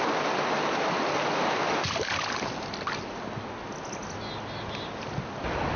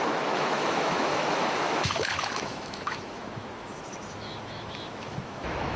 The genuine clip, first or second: first